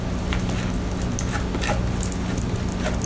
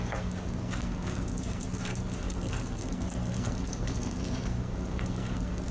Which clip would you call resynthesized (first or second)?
second